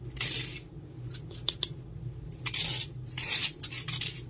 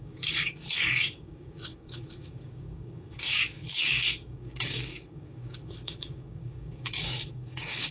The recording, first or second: first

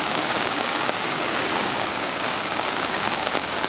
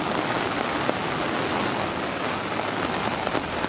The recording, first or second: second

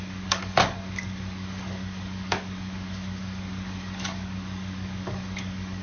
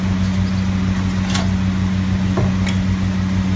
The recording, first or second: second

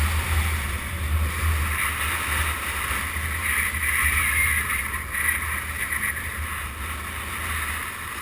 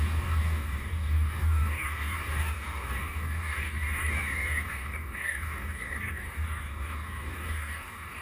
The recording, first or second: first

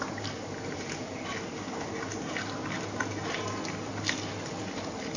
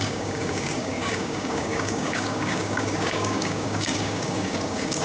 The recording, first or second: first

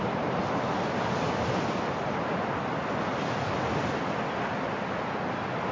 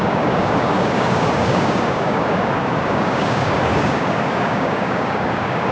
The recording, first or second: first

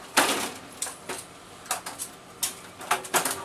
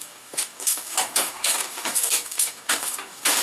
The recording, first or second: first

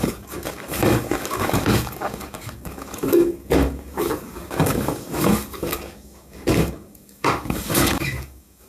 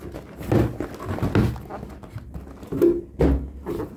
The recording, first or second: second